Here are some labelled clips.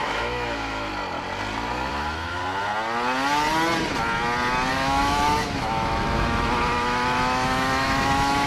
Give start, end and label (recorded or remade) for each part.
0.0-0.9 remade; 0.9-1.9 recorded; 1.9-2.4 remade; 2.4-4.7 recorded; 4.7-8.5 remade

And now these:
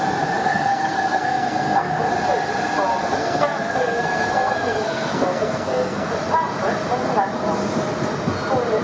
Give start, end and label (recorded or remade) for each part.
0.0-0.4 recorded; 0.4-2.1 remade; 2.1-3.0 recorded; 3.0-6.1 remade; 6.1-8.8 recorded

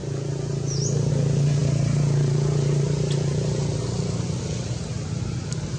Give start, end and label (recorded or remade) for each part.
0.0-5.8 recorded

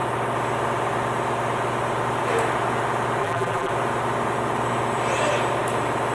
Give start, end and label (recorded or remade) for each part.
0.0-3.2 recorded; 3.2-3.7 remade; 3.7-6.1 recorded

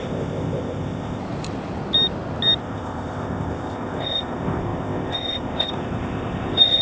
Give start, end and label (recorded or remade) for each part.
0.0-1.2 remade; 1.2-2.6 recorded; 2.6-6.8 remade

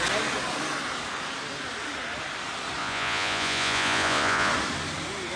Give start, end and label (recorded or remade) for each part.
0.0-2.8 recorded; 2.8-4.5 remade; 4.5-5.4 recorded

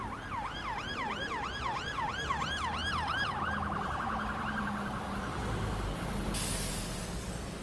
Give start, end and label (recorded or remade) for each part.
0.0-7.6 recorded

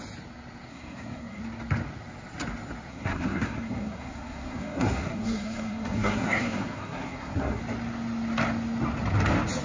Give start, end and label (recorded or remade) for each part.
0.0-0.7 recorded; 0.7-1.4 remade; 1.4-2.9 recorded; 2.9-7.6 remade; 7.6-9.6 recorded